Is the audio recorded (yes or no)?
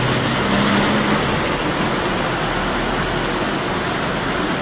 yes